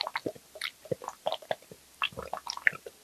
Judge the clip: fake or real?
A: real